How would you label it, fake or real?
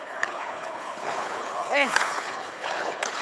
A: fake